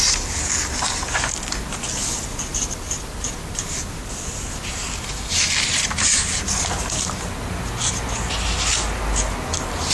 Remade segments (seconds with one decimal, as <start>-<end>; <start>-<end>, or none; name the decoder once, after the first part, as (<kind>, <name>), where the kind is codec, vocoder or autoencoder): 2.5-3.1 (vocoder, BigVGAN v2)